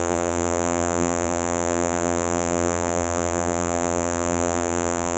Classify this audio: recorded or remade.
remade